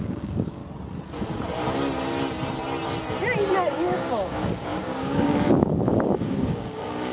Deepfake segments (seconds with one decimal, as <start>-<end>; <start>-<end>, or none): 0.0-0.6; 3.7-7.1